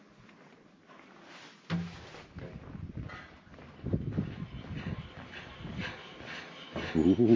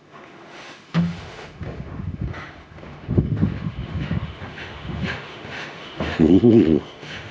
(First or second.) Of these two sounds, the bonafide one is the first